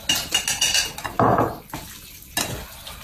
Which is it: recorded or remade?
recorded